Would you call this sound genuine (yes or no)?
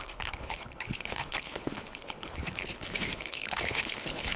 no